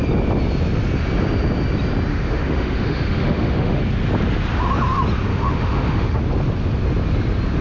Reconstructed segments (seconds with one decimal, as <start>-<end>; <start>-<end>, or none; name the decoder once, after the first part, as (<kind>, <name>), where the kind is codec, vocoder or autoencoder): 2.1-3.8 (autoencoder, DAC-VAE); 5.3-6.2